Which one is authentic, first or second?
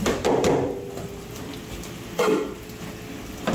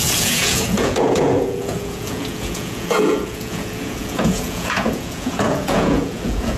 first